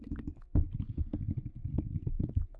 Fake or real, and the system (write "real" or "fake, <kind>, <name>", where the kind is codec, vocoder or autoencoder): real